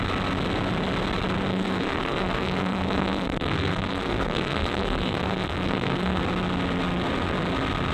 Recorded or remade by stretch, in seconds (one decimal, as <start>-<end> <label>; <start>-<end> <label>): 0.0-1.5 recorded; 1.5-6.2 remade; 6.2-7.9 recorded